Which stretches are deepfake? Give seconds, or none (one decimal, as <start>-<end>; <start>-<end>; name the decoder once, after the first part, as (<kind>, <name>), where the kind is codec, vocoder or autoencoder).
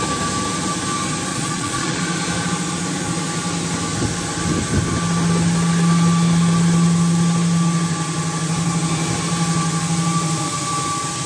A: 1.3-2.0 (vocoder, Vocos)